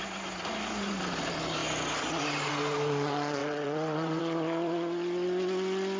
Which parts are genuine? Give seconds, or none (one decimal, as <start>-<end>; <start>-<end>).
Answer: 0.0-3.4; 4.2-6.0